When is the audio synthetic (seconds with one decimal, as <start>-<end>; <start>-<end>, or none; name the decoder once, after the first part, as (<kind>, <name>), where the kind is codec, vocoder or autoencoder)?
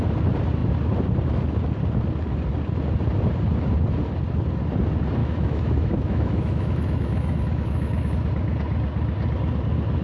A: 5.2-8.1 (autoencoder, DAC-VAE)